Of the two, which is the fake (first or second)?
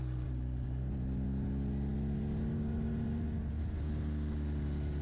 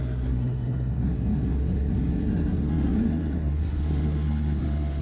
second